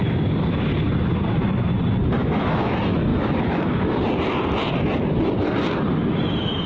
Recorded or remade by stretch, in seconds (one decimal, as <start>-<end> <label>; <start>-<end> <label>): 0.0-2.2 recorded; 2.2-2.7 remade; 2.7-3.1 recorded; 3.1-4.0 remade; 4.0-6.7 recorded